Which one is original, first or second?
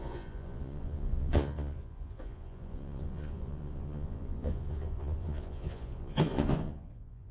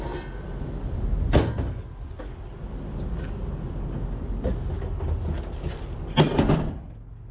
second